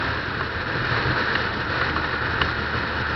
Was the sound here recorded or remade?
recorded